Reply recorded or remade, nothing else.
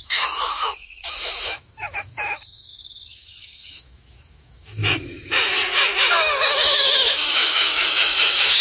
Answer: remade